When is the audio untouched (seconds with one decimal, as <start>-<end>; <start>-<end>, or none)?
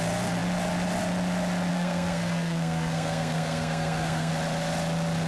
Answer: 0.0-1.7; 4.3-5.3